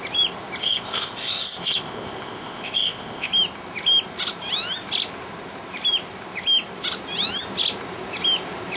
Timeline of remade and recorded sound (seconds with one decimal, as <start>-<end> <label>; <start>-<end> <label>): 0.0-0.6 recorded; 0.6-3.3 remade; 3.3-8.8 recorded